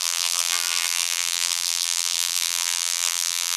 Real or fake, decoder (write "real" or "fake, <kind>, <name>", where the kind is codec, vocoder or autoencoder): fake, vocoder, BigVGAN v2